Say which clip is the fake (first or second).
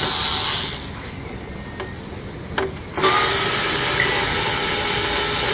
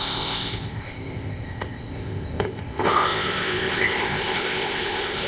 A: second